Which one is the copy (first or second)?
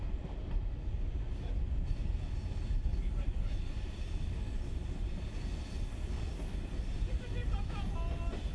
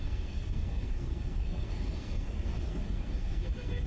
second